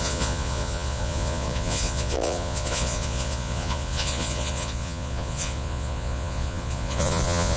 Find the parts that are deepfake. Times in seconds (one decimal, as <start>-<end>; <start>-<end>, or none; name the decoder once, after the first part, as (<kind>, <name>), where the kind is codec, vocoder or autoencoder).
0.0-7.6 (vocoder, Vocos)